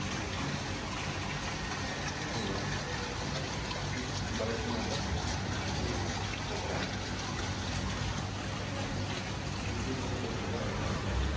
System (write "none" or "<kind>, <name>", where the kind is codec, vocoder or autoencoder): none